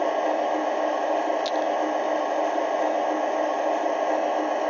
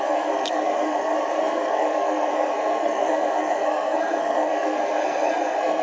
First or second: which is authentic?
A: first